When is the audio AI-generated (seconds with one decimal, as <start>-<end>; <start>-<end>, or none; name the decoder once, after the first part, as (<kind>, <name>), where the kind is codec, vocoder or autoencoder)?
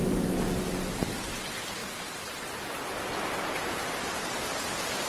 none